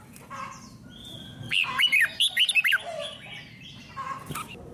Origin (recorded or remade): recorded